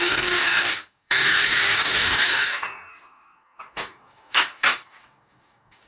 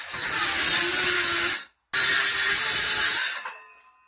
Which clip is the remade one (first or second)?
first